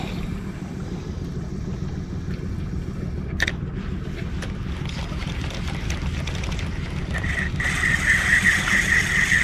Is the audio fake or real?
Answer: real